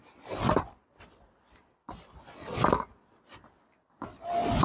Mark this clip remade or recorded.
recorded